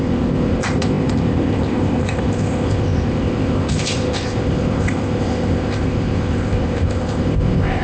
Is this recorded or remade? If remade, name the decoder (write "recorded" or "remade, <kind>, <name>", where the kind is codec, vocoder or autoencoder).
remade, codec, ZipCodec